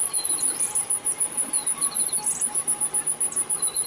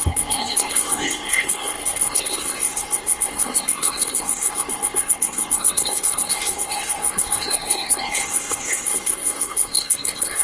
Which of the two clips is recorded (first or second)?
first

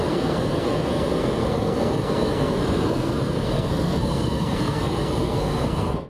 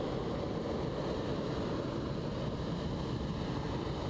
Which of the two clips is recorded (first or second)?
second